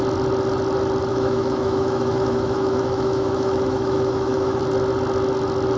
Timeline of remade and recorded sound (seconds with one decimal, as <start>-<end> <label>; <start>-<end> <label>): 0.0-1.1 recorded; 1.1-4.6 remade; 4.6-5.8 recorded